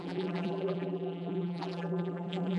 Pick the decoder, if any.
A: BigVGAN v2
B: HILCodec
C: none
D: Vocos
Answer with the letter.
A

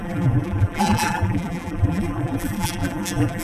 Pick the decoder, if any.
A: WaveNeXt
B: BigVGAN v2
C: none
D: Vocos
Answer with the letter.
B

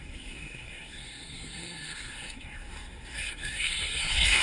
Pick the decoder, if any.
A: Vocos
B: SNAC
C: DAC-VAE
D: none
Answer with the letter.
B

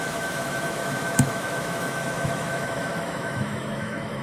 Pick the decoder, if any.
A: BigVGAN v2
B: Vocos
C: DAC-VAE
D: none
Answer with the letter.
C